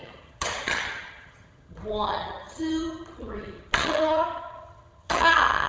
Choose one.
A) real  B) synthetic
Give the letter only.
B